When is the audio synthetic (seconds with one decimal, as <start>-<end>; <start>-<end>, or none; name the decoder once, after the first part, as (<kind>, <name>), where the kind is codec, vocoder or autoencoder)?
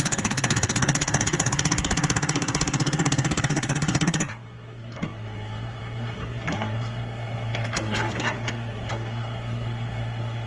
0.0-10.5 (codec, SNAC)